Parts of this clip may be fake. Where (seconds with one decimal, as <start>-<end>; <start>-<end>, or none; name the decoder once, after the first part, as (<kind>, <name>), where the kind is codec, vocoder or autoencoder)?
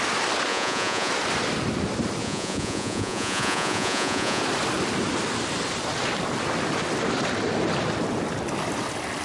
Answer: 0.5-1.1 (vocoder, Vocos); 2.2-4.4